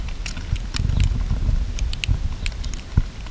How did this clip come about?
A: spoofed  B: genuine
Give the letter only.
B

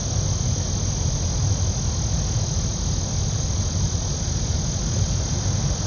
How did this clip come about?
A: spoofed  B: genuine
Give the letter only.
A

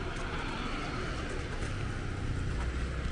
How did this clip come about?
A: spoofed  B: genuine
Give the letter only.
B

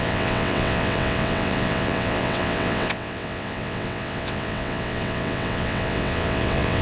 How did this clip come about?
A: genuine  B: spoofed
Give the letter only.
B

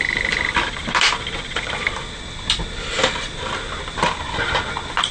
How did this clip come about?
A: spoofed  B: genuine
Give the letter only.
B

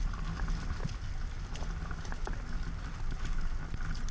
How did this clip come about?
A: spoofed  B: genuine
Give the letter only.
B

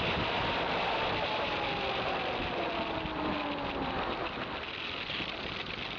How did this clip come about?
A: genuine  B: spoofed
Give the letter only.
A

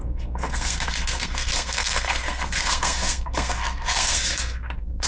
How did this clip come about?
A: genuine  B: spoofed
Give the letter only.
B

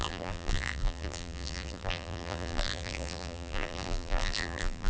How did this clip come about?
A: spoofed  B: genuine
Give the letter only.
A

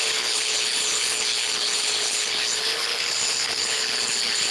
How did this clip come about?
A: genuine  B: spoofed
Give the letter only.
B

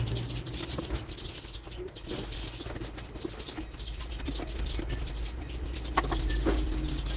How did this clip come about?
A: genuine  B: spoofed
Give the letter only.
A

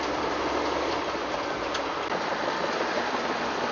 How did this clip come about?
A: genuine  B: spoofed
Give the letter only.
A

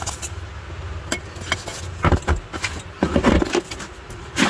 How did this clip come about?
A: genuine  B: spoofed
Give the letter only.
A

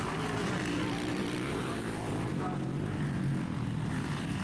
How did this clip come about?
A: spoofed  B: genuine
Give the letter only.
B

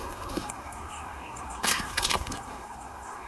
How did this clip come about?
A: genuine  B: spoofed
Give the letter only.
B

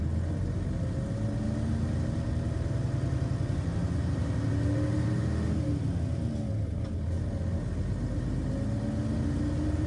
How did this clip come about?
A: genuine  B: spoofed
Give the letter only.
A